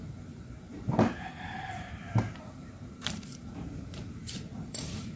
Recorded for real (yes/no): no